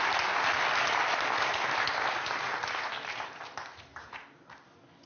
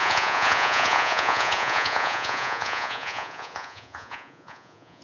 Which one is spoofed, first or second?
second